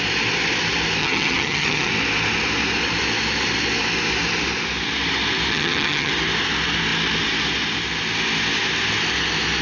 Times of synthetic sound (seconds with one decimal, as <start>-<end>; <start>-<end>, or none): 1.0-1.9; 5.5-6.1